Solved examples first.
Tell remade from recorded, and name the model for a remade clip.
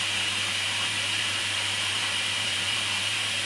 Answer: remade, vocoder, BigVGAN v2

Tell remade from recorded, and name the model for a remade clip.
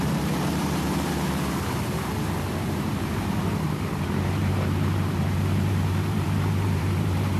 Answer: remade, vocoder, BigVGAN v2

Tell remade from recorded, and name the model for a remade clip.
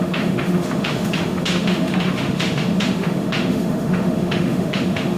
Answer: remade, autoencoder, DAC-VAE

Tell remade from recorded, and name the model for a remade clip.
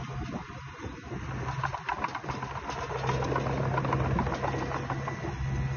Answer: recorded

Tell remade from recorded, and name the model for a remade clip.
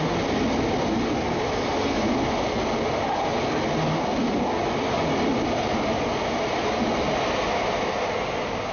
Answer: recorded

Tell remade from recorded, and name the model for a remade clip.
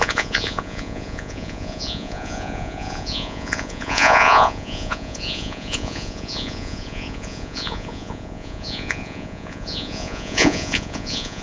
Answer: remade, vocoder, Vocos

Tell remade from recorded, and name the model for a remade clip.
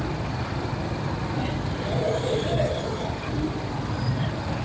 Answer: recorded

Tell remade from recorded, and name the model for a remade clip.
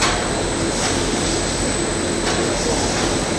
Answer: recorded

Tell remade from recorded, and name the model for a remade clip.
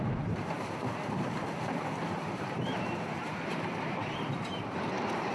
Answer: remade, vocoder, BigVGAN v2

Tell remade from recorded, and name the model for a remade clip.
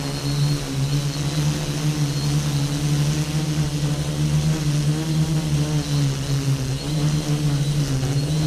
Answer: recorded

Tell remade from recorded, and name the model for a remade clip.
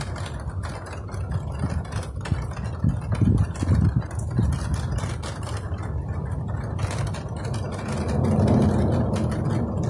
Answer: recorded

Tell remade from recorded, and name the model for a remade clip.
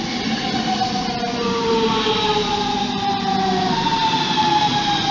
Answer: recorded